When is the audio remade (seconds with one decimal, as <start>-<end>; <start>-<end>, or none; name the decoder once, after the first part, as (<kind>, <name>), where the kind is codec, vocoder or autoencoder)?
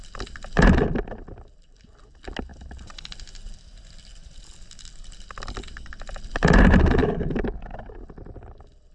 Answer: 7.0-7.7 (codec, DAC)